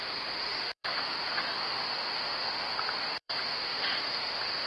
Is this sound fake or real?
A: fake